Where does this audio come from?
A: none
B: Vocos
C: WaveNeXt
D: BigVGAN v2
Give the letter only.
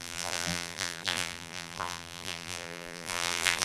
D